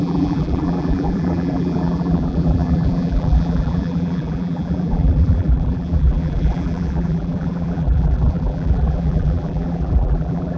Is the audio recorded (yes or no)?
no